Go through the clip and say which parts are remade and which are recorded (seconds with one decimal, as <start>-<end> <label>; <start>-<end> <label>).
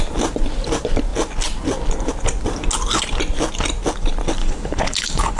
0.0-4.4 recorded; 4.4-5.4 remade